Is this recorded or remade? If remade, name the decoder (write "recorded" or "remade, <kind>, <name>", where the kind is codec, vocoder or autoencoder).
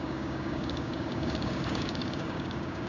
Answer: remade, codec, DAC